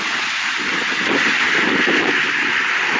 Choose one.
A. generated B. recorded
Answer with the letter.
B